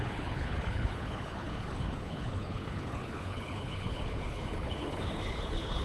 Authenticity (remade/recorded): remade